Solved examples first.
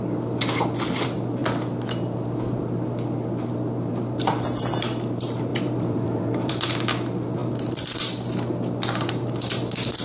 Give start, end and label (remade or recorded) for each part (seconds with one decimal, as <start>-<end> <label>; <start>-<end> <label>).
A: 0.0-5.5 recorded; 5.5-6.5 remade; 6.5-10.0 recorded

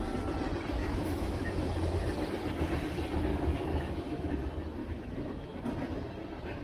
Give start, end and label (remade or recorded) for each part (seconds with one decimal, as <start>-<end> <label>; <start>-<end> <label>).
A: 0.0-0.8 recorded; 0.8-1.5 remade; 1.5-3.3 recorded; 3.3-4.3 remade; 4.3-4.8 recorded; 4.8-5.6 remade; 5.6-6.6 recorded

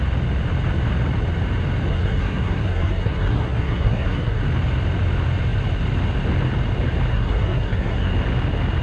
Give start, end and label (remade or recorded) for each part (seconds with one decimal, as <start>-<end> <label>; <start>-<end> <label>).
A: 0.0-1.9 recorded; 1.9-4.4 remade; 4.4-7.1 recorded; 7.1-8.1 remade; 8.1-8.8 recorded

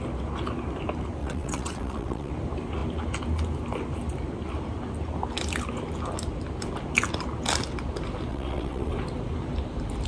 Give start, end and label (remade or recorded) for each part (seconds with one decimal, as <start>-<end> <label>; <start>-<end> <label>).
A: 0.0-1.2 recorded; 1.2-2.3 remade; 2.3-8.3 recorded; 8.3-8.9 remade; 8.9-10.1 recorded